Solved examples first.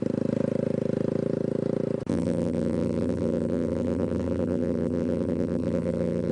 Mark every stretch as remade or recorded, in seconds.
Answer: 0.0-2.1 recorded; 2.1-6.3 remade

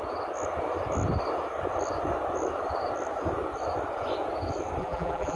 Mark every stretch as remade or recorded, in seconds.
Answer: 0.0-4.8 recorded; 4.8-5.4 remade

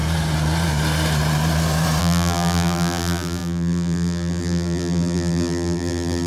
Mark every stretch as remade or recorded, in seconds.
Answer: 0.0-2.0 recorded; 2.0-6.3 remade